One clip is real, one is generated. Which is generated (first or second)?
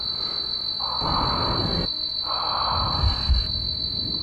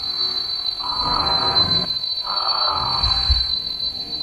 second